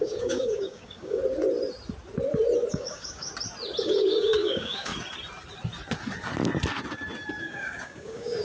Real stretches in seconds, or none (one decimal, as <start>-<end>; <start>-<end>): 1.2-2.7; 3.3-3.8; 4.9-7.4